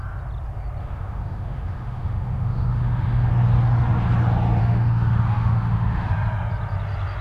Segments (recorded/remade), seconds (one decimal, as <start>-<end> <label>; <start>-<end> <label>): 0.0-0.8 recorded; 0.8-3.3 remade; 3.3-4.6 recorded; 4.6-6.1 remade; 6.1-7.2 recorded